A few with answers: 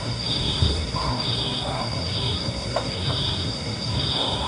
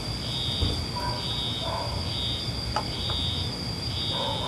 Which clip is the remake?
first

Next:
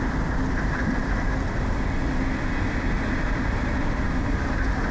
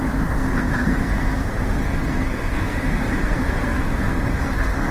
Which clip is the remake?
second